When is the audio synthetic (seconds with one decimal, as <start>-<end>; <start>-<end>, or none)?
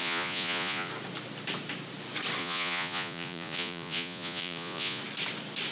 0.0-0.9; 2.4-5.0